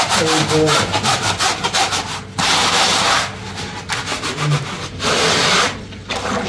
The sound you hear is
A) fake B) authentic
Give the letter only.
B